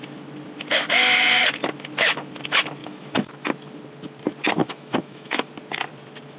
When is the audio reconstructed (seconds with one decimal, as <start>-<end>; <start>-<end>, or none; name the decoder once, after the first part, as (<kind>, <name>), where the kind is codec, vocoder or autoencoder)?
2.8-3.3 (autoencoder, DAC-VAE); 4.6-5.5